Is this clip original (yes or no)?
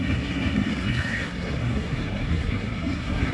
no